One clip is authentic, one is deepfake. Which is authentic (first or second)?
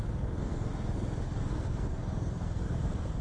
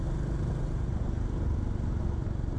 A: second